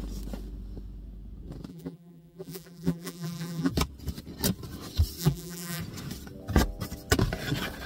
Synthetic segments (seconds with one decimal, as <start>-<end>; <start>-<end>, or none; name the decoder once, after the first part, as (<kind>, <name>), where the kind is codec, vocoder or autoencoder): 1.7-3.7 (vocoder, BigVGAN v2); 5.2-5.8